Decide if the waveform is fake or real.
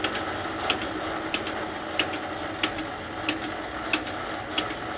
real